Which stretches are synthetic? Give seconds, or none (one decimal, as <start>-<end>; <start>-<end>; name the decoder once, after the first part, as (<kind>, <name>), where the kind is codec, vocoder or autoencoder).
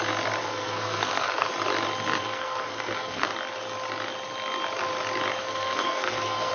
0.4-1.5 (codec, SNAC); 2.2-3.3; 5.4-6.5